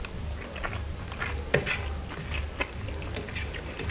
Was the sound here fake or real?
real